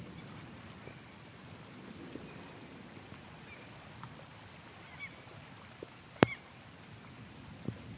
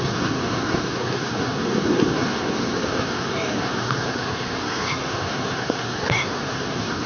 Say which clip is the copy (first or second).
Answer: second